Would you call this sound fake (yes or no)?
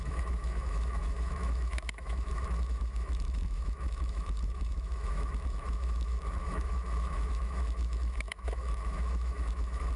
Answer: yes